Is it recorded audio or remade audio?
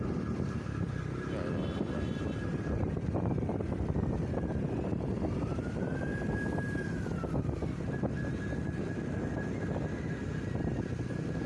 recorded